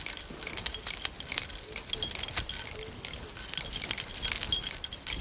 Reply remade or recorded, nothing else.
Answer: recorded